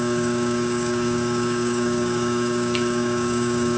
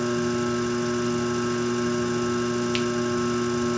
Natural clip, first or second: second